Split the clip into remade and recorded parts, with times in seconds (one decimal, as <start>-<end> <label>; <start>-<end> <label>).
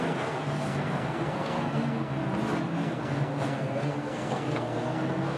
0.0-2.2 remade; 2.2-2.7 recorded; 2.7-5.4 remade